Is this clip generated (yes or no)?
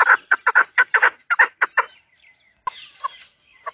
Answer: no